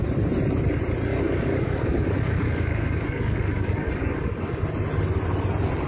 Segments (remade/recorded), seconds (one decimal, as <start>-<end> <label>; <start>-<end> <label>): 0.0-1.1 recorded; 1.1-4.6 remade; 4.6-5.9 recorded